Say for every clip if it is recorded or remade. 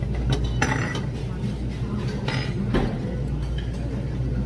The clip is recorded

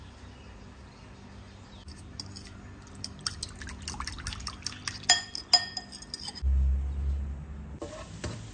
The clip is recorded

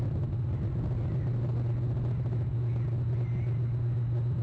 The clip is recorded